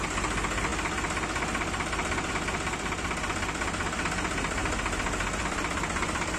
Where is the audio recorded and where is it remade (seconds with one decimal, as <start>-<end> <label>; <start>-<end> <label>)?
0.0-6.4 recorded